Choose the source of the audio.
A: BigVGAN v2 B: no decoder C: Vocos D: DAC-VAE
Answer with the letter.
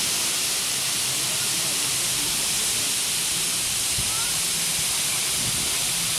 B